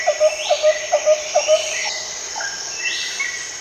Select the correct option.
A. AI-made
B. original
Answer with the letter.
B